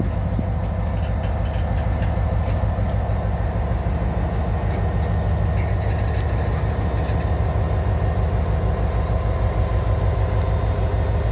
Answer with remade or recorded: recorded